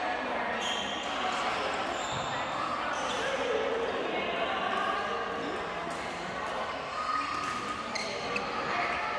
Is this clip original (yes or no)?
yes